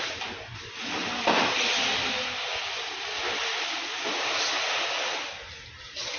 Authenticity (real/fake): real